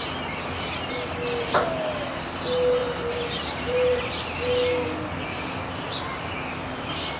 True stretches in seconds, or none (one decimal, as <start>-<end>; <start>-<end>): 0.0-2.8; 4.1-6.1